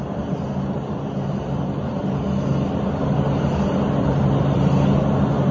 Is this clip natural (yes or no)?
yes